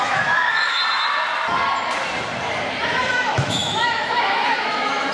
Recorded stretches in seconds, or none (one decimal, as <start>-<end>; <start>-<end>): 0.8-3.1